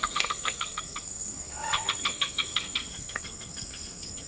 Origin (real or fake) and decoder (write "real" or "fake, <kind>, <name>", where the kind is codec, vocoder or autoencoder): fake, codec, SNAC